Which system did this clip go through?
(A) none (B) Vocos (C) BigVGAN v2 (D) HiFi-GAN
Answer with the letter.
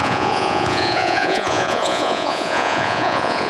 B